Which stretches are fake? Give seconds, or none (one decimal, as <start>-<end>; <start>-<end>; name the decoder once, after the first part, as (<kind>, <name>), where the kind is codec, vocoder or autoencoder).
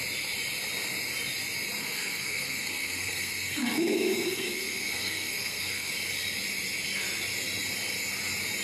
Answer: 1.8-5.9 (codec, SNAC)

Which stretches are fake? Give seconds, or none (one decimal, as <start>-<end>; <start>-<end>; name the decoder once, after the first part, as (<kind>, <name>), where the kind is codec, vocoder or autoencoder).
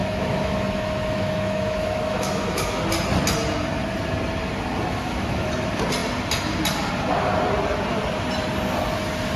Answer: 0.0-2.8 (autoencoder, DAC-VAE); 4.9-5.5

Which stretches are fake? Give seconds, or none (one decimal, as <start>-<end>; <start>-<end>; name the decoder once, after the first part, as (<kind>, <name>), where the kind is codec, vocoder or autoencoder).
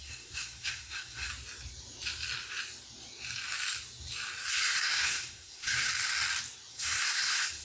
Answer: 0.0-1.3 (codec, SNAC); 4.5-5.9; 6.7-7.6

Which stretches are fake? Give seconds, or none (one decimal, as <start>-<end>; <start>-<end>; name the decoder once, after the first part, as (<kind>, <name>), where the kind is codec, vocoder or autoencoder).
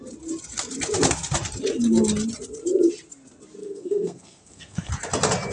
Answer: 3.6-4.9 (codec, SNAC)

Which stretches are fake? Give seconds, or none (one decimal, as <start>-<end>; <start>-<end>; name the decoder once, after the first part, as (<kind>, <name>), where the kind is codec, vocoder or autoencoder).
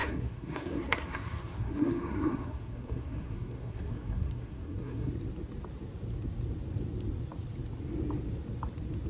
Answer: 0.0-5.1 (codec, SNAC)